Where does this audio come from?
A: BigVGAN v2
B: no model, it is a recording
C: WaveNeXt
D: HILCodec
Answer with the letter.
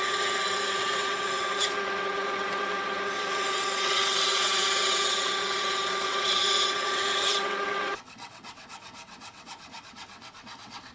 C